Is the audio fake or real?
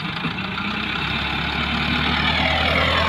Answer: real